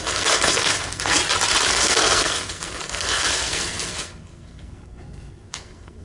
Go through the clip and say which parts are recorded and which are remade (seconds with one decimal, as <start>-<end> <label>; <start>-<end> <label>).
0.0-1.2 remade; 1.2-1.7 recorded; 1.7-6.0 remade